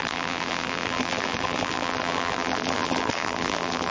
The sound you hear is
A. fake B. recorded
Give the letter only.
A